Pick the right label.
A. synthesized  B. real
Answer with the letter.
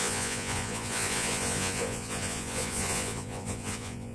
A